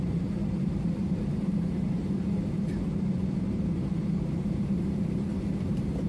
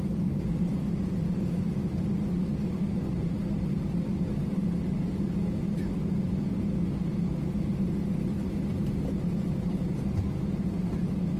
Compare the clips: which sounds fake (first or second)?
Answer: first